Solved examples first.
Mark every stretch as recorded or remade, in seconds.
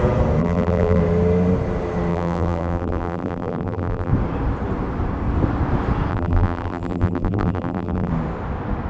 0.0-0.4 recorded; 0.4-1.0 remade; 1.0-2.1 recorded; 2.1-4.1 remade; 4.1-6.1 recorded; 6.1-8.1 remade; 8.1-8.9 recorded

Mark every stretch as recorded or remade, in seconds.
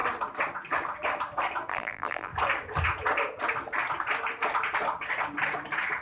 0.0-1.7 recorded; 1.7-2.3 remade; 2.3-6.0 recorded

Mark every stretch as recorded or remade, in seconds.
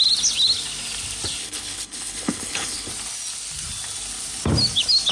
0.0-1.4 recorded; 1.4-2.9 remade; 2.9-5.1 recorded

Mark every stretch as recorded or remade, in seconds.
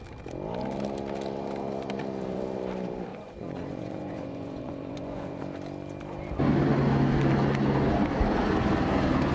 0.0-3.1 recorded; 3.1-5.4 remade; 5.4-9.3 recorded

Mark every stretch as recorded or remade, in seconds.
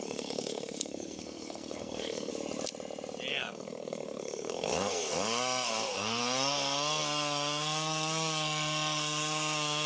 0.0-2.3 remade; 2.3-3.3 recorded; 3.3-9.9 remade